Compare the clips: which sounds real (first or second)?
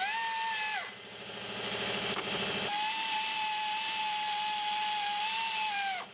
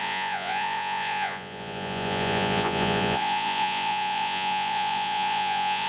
first